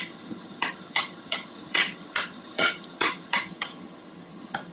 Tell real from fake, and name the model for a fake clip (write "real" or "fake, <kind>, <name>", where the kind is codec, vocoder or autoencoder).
fake, vocoder, HiFi-GAN